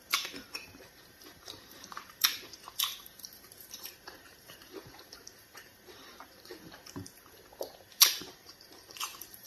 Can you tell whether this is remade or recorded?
remade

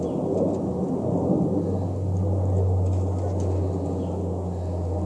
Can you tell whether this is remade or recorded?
recorded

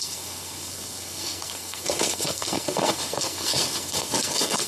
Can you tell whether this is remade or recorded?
remade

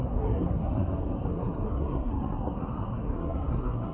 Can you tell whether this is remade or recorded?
remade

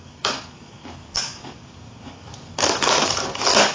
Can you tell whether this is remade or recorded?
remade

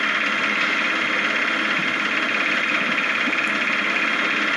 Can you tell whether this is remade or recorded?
recorded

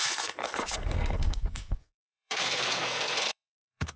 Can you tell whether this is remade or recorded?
remade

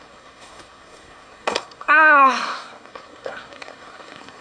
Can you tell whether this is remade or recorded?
remade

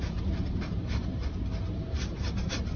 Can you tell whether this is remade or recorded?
recorded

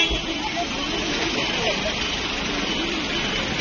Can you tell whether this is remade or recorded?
recorded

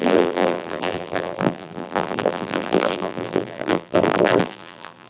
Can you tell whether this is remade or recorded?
remade